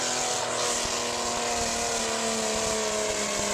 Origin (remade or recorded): recorded